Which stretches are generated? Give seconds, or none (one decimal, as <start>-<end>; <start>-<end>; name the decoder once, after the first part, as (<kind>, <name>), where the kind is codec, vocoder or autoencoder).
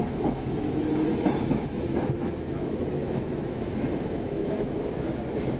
0.0-5.6 (autoencoder, DAC-VAE)